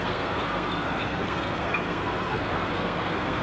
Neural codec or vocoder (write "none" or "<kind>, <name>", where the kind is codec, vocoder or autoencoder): codec, SNAC